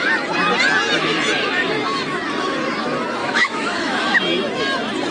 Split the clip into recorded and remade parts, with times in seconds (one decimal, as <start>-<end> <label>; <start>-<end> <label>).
0.0-3.2 recorded; 3.2-4.2 remade; 4.2-5.1 recorded